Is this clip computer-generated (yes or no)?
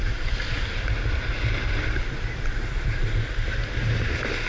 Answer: no